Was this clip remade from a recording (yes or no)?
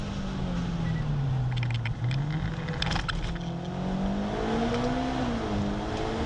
no